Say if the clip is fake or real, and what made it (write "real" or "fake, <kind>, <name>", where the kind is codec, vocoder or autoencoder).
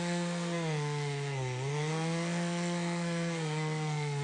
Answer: fake, codec, SNAC